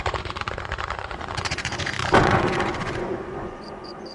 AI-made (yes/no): yes